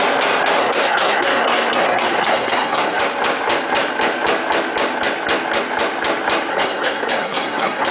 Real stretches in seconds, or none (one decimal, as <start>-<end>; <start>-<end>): 0.0-0.6; 3.0-6.5